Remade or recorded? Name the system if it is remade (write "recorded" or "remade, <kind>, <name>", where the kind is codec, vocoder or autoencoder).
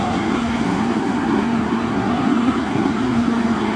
remade, codec, SNAC